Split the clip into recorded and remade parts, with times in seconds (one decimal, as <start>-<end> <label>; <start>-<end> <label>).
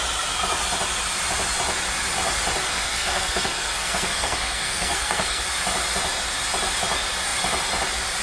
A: 0.0-2.6 recorded; 2.6-5.4 remade; 5.4-8.2 recorded